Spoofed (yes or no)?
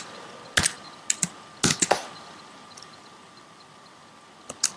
no